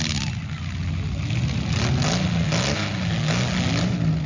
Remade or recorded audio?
recorded